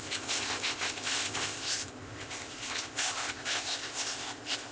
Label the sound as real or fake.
fake